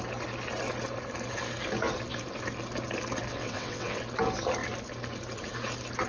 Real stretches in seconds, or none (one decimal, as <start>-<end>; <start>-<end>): 0.0-3.3; 4.0-6.1